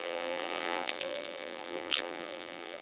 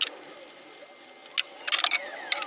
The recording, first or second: second